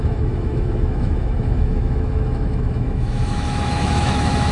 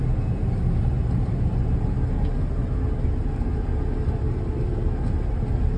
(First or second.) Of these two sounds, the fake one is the first